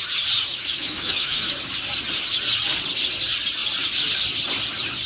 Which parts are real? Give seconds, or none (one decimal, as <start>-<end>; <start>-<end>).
0.0-0.5; 1.5-5.1